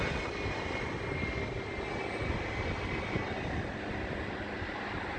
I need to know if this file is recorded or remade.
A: recorded